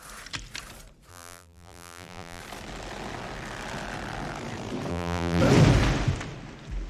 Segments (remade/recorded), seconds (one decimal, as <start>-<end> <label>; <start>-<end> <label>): 0.0-1.1 recorded; 1.1-2.4 remade; 2.4-4.9 recorded; 4.9-5.4 remade; 5.4-6.9 recorded